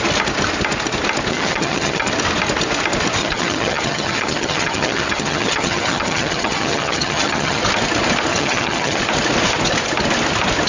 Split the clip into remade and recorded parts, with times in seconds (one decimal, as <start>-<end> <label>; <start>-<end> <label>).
0.0-1.3 recorded; 1.3-2.1 remade; 2.1-3.2 recorded; 3.2-7.6 remade; 7.6-8.3 recorded; 8.3-9.0 remade; 9.0-10.7 recorded